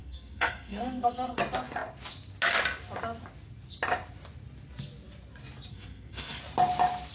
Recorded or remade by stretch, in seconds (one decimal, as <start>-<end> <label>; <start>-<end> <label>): 0.0-1.4 remade; 1.4-5.7 recorded; 5.7-6.4 remade; 6.4-7.1 recorded